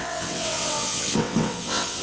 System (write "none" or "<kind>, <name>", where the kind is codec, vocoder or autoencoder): vocoder, WaveNeXt